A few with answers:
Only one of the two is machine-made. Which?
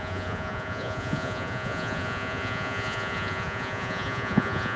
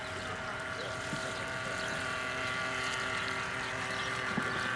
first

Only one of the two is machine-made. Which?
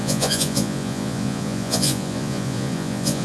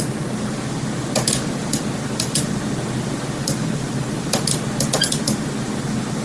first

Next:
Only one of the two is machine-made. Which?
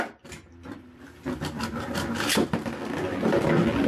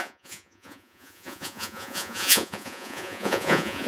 second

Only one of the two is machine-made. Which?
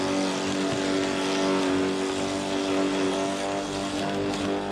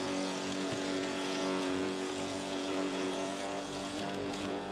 second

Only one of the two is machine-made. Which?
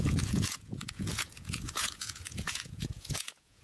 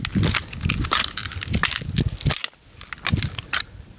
first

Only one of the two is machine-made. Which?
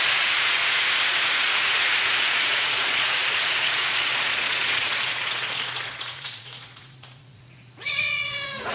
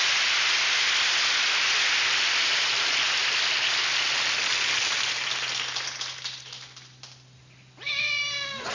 first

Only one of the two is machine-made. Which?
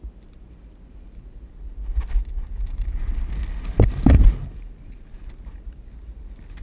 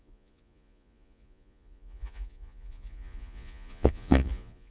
second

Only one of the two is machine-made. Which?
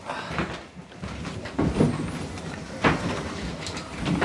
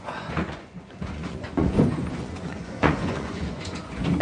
second